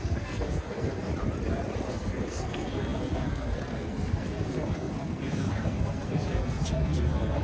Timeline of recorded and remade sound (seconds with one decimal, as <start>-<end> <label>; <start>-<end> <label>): 0.0-1.1 remade; 1.1-1.9 recorded; 1.9-7.4 remade